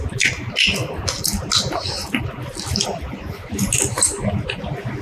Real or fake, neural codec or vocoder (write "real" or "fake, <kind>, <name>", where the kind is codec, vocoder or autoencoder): real